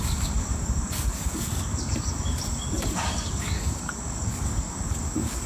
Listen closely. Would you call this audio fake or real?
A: fake